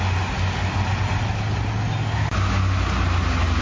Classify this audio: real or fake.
real